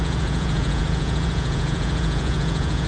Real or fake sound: fake